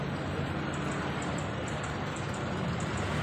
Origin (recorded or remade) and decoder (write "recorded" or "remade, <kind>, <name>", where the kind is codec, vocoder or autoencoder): recorded